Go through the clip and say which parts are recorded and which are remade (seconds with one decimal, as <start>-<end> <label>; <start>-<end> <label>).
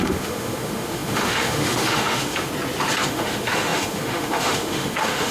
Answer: 0.0-2.5 remade; 2.5-3.1 recorded; 3.1-5.3 remade